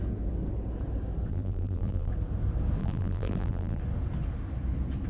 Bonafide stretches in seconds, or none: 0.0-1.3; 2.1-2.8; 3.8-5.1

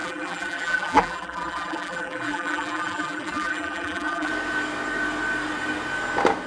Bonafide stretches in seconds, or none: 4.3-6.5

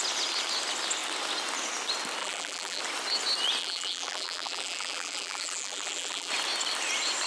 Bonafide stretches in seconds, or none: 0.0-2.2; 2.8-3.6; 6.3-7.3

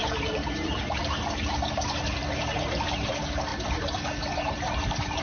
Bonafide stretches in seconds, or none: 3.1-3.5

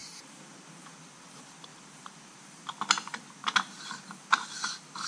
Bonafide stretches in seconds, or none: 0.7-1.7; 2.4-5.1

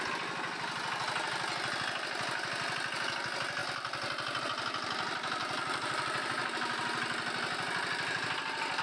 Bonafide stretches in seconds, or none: 0.0-5.4; 6.8-8.8

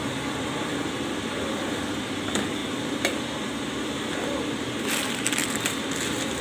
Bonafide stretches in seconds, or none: 1.0-6.4